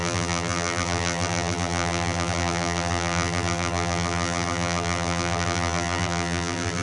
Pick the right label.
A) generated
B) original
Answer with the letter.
A